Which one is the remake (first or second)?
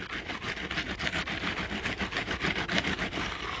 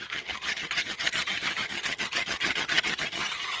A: second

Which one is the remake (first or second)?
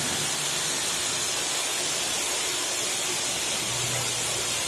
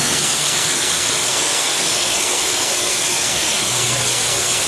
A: second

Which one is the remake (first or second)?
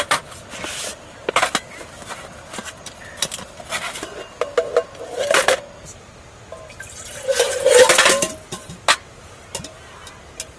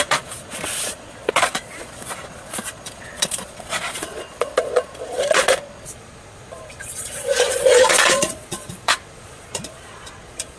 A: second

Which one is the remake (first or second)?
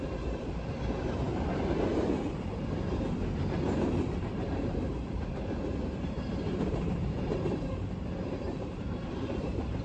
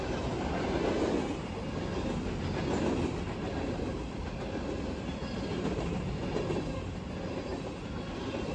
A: first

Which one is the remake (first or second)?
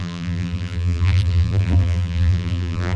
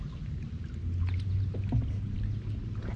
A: first